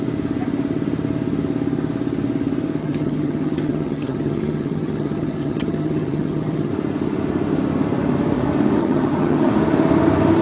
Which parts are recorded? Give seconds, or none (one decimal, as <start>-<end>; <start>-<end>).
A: 0.0-2.8; 6.7-8.8; 9.5-10.4